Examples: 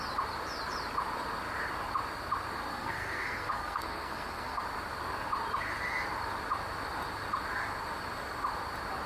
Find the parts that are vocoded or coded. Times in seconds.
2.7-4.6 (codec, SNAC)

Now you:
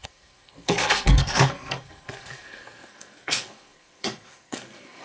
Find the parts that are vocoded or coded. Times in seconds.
0.0-5.0 (codec, SNAC)